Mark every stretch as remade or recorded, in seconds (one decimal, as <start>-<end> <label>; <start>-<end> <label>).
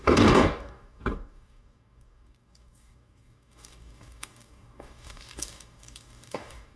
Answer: 0.0-6.8 remade